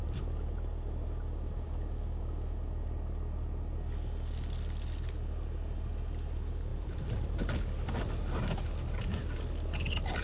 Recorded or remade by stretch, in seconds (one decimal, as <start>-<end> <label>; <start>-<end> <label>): 0.0-6.7 recorded; 6.7-7.5 remade; 7.5-10.2 recorded

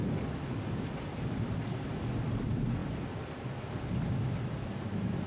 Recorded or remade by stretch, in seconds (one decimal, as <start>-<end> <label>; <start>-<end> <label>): 0.0-5.3 recorded

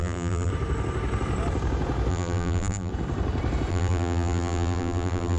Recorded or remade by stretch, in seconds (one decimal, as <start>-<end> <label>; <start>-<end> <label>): 0.0-0.5 remade; 0.5-2.1 recorded; 2.1-2.9 remade; 2.9-3.7 recorded; 3.7-5.4 remade

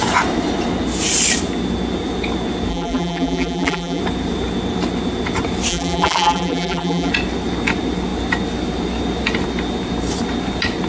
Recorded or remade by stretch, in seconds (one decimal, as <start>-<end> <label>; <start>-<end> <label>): 0.0-2.7 recorded; 2.7-4.0 remade; 4.0-5.7 recorded; 5.7-7.1 remade; 7.1-10.9 recorded

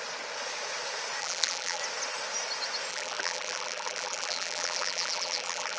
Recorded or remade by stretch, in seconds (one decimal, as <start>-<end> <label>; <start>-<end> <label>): 0.0-1.2 recorded; 1.2-1.8 remade; 1.8-2.9 recorded; 2.9-5.8 remade

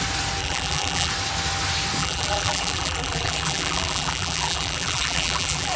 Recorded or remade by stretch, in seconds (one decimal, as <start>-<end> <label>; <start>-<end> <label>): 0.0-0.4 recorded; 0.4-1.1 remade; 1.1-2.0 recorded; 2.0-5.8 remade

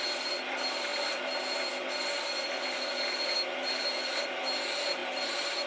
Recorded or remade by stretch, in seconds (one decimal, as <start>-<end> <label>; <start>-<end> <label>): 0.0-5.0 recorded; 5.0-5.7 remade

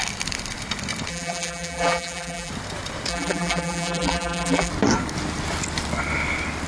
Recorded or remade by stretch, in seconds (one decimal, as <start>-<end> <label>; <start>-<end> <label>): 0.0-1.1 recorded; 1.1-2.5 remade; 2.5-3.1 recorded; 3.1-4.7 remade; 4.7-6.7 recorded